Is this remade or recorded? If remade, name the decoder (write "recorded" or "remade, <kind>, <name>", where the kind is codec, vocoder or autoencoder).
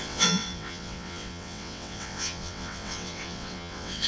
remade, vocoder, WaveNeXt